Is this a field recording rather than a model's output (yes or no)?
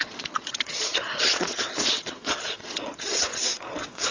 no